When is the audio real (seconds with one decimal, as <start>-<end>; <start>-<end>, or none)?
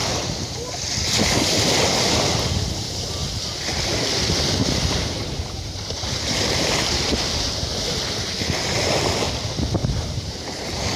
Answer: 0.0-4.6; 8.3-9.8; 10.6-11.0